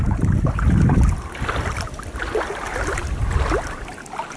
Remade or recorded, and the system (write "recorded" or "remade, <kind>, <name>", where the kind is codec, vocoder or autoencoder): recorded